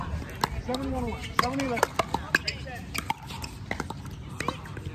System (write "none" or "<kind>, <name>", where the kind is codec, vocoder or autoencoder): none